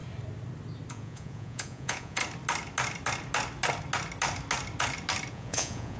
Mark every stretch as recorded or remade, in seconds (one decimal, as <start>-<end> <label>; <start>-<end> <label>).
0.0-0.9 recorded; 0.9-2.2 remade; 2.2-5.3 recorded; 5.3-6.0 remade